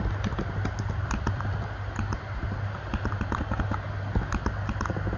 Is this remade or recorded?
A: recorded